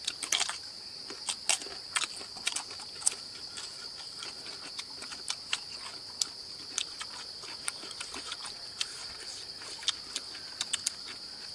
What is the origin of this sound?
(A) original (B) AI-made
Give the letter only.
A